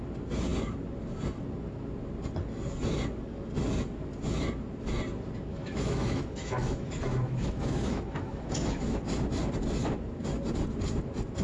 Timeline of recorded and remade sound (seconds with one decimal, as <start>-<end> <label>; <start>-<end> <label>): 0.0-5.5 recorded; 5.5-9.0 remade; 9.0-11.4 recorded